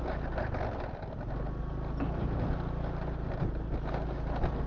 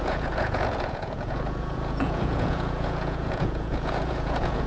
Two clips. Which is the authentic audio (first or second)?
first